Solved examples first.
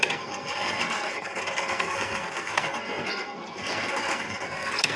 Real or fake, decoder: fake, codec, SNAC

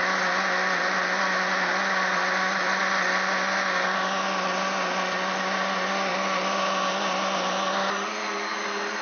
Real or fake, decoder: real